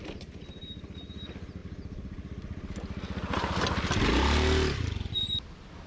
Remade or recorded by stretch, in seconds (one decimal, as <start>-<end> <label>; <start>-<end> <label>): 0.0-5.9 recorded